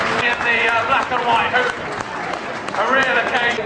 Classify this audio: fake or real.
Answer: real